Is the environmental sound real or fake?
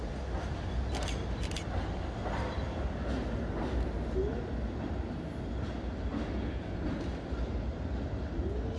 real